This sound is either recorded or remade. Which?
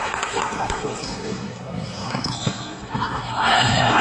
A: remade